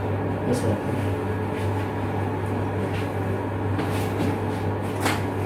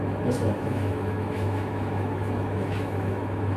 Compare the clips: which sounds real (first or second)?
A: first